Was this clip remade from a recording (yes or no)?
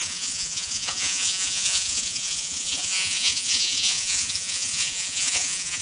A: yes